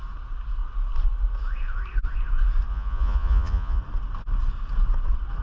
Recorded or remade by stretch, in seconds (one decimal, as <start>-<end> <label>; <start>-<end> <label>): 0.0-2.7 recorded; 2.7-3.8 remade; 3.8-5.4 recorded